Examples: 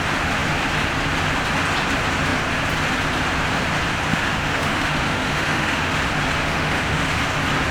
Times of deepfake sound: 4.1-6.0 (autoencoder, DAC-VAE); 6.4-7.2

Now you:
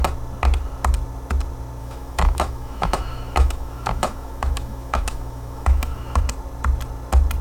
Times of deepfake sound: 1.8-6.2 (autoencoder, DAC-VAE)